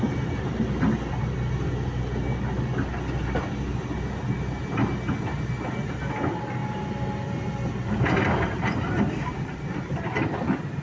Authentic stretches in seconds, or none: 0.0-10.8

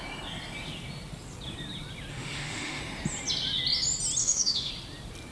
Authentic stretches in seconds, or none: 0.0-2.1; 2.8-4.2; 4.7-5.3